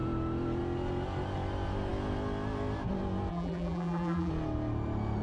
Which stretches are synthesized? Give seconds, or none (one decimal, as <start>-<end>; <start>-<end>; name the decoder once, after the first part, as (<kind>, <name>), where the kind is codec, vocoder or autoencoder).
3.3-4.3 (vocoder, BigVGAN v2)